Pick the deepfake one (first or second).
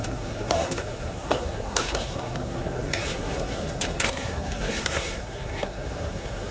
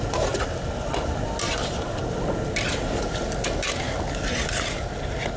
first